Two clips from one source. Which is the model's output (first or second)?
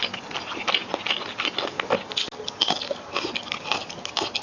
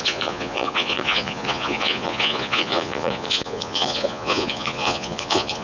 second